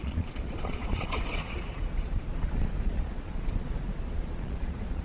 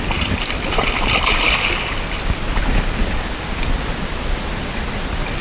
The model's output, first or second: first